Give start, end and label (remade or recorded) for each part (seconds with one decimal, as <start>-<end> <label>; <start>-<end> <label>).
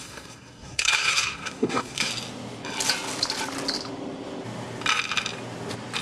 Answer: 0.0-2.1 remade; 2.1-6.0 recorded